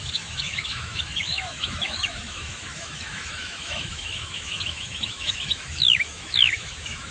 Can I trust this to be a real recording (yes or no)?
no